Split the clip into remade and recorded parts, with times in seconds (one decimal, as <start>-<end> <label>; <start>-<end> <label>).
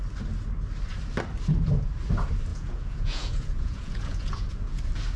0.0-2.5 recorded; 2.5-4.8 remade; 4.8-5.2 recorded